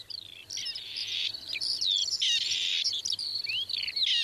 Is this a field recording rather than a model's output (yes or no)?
yes